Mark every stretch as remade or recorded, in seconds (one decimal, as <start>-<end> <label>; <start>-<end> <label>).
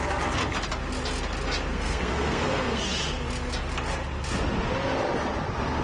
0.0-1.7 recorded; 1.7-2.8 remade; 2.8-5.8 recorded